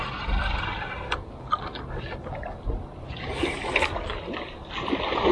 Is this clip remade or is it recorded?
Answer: recorded